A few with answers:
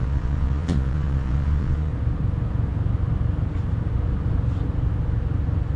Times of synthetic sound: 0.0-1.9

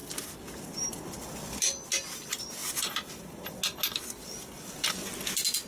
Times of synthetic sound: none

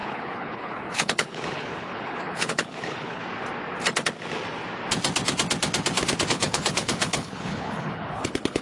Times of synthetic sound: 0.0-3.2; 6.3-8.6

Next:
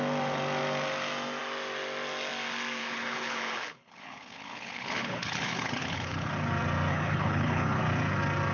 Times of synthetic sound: 2.8-6.3; 6.9-7.8